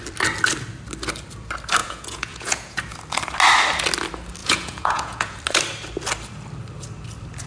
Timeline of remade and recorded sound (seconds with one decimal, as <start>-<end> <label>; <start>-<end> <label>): 0.0-1.8 recorded; 1.8-2.8 remade; 2.8-4.4 recorded; 4.4-5.4 remade; 5.4-7.5 recorded